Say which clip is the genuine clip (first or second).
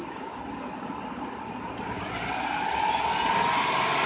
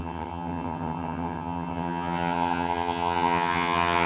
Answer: first